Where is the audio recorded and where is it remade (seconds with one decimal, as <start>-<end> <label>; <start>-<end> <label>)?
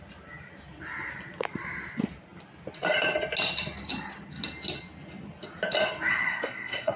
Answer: 0.0-6.1 recorded; 6.1-7.0 remade